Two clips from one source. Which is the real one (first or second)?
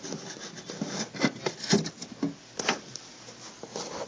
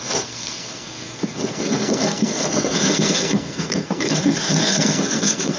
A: first